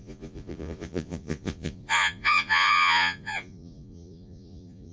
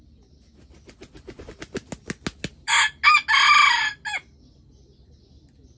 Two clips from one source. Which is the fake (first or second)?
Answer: first